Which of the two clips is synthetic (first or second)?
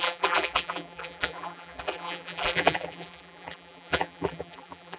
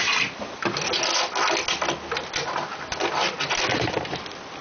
first